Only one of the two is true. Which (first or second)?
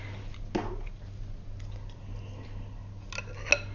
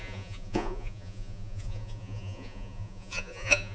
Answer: first